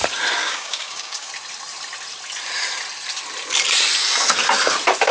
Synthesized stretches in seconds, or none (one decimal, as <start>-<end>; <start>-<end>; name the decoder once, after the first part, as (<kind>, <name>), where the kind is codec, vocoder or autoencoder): 0.4-1.3 (codec, DAC)